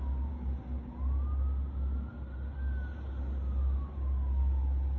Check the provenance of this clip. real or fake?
real